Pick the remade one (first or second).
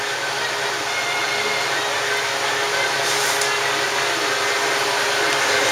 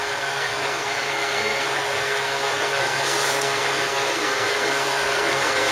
second